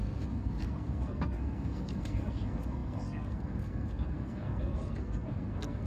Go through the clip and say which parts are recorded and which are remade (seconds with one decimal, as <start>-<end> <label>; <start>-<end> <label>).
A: 0.0-5.9 remade